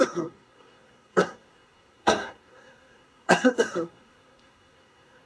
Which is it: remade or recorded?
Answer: remade